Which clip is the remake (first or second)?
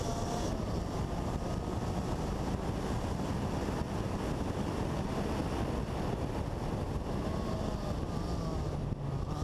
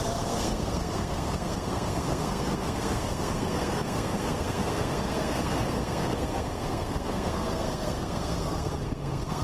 second